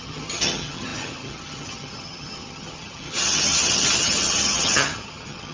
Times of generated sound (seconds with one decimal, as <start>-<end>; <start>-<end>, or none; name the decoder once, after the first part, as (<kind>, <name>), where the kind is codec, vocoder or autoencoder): 0.0-5.5 (vocoder, HiFi-GAN)